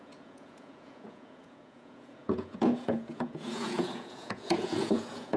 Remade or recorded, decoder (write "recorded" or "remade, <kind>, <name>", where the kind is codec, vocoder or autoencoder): remade, vocoder, Vocos